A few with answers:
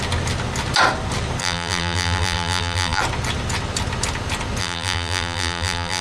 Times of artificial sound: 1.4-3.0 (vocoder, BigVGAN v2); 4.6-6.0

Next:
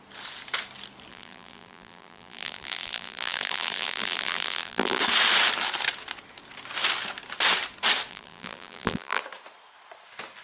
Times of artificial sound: 1.1-5.0 (vocoder, BigVGAN v2); 8.1-9.2

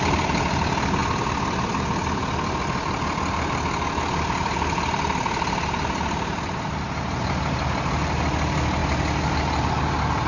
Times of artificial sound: 8.8-9.7 (vocoder, BigVGAN v2)

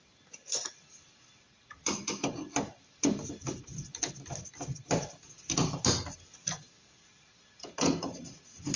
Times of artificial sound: 1.6-3.8 (vocoder, BigVGAN v2)

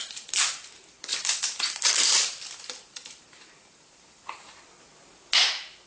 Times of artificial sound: 1.1-4.6 (vocoder, BigVGAN v2)

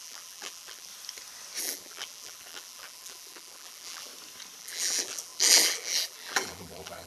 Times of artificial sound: 0.0-0.9 (vocoder, BigVGAN v2); 1.6-4.1; 4.6-7.1

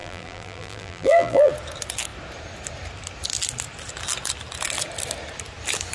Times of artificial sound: 0.0-1.5 (vocoder, BigVGAN v2)